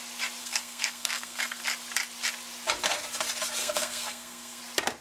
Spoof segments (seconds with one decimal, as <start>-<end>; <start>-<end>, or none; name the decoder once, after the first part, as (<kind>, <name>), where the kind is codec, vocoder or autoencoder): 0.4-1.6 (codec, SNAC); 3.6-4.6